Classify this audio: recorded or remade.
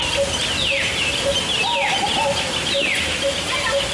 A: recorded